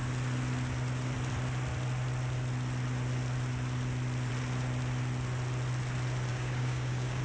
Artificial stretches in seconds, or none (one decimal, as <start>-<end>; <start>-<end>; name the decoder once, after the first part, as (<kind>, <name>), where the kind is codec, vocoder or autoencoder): 6.3-7.2 (codec, DAC)